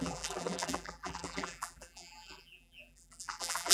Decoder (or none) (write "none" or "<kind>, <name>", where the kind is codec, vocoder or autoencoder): vocoder, BigVGAN v2